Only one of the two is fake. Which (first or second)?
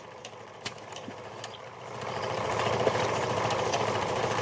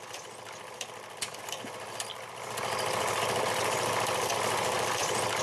first